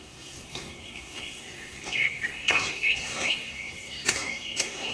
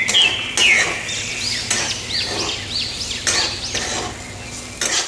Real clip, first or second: second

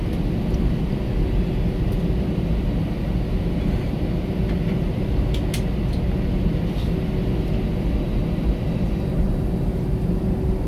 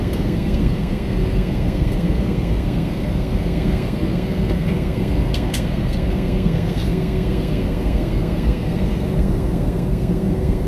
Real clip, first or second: first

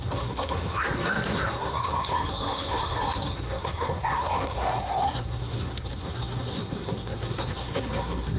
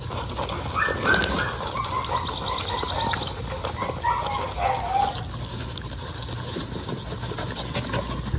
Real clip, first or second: second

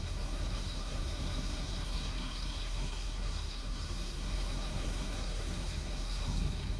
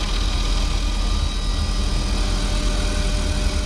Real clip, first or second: second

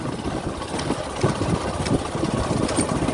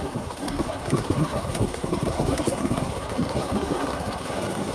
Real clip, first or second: first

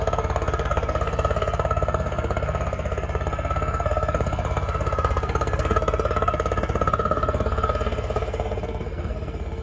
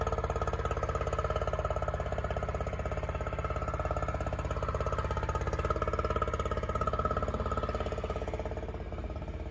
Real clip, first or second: second